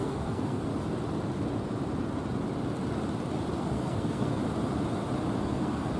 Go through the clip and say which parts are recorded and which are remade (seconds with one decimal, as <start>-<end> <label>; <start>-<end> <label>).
0.0-0.7 remade; 0.7-3.6 recorded; 3.6-4.4 remade; 4.4-5.4 recorded; 5.4-6.0 remade